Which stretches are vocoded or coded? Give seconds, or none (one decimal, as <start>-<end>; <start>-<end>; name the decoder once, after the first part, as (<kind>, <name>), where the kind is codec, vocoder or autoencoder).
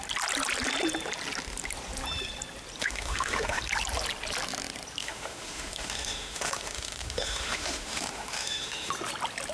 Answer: 2.8-3.6 (autoencoder, DAC-VAE); 5.0-8.9